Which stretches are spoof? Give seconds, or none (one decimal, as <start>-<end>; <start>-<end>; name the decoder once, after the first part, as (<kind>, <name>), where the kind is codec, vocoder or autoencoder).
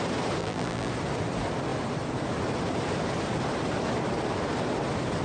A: 0.4-0.9 (vocoder, BigVGAN v2)